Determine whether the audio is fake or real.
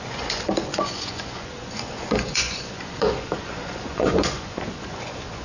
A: fake